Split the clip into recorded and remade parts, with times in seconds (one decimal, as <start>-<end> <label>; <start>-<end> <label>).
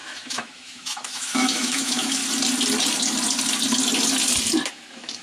0.0-2.2 remade; 2.2-4.7 recorded; 4.7-5.2 remade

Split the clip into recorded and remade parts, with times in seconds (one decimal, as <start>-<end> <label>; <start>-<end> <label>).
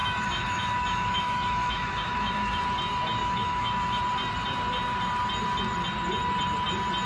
0.0-2.6 remade; 2.6-3.2 recorded; 3.2-4.0 remade; 4.0-7.1 recorded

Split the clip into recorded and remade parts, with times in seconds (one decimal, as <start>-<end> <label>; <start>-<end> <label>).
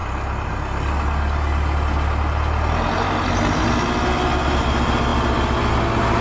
0.0-6.2 recorded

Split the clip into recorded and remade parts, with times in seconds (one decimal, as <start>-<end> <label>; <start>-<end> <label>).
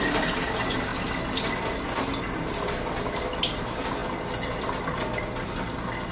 0.0-6.1 recorded